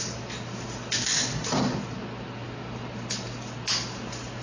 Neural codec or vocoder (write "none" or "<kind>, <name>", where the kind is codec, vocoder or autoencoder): none